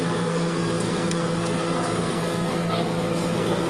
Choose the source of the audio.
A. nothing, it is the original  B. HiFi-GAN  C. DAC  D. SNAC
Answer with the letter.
D